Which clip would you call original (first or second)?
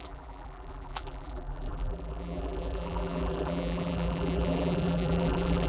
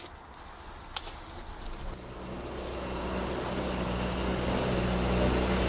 second